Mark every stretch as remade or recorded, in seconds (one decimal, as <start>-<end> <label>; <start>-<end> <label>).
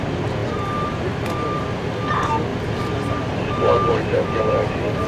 0.0-5.1 recorded